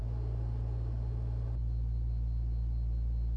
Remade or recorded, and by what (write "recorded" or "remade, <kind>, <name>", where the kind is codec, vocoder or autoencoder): recorded